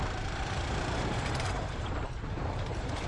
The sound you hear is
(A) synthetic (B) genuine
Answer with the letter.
A